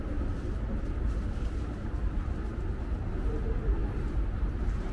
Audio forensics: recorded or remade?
recorded